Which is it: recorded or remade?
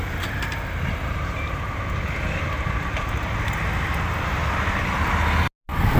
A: recorded